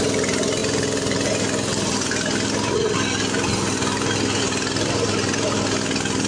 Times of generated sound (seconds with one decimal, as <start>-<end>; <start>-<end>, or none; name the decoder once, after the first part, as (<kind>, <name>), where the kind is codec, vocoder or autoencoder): none